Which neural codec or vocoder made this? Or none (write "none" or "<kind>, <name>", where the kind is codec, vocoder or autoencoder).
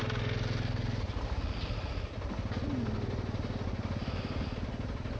none